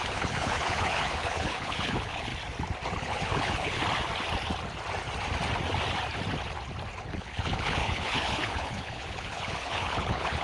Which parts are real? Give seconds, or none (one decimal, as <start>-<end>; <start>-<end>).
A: 2.3-3.0; 3.8-7.0